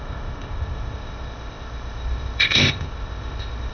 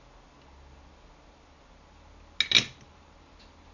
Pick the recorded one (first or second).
second